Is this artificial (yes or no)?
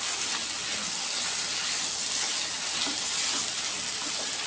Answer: no